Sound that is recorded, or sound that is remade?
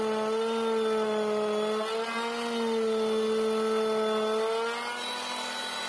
recorded